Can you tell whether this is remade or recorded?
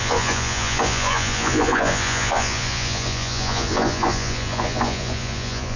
remade